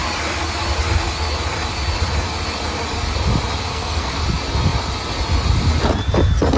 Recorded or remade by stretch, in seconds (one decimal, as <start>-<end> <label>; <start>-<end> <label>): 0.0-3.7 recorded; 3.7-4.2 remade; 4.2-6.6 recorded